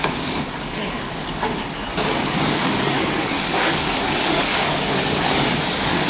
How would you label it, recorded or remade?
remade